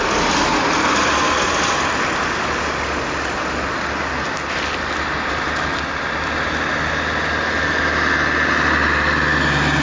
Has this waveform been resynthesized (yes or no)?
no